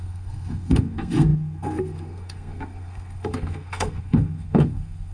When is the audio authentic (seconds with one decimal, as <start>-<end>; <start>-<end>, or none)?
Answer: none